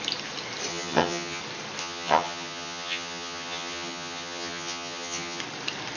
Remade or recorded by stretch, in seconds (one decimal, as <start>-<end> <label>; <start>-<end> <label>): 0.0-0.7 recorded; 0.7-1.4 remade; 1.4-1.8 recorded; 1.8-5.4 remade; 5.4-6.0 recorded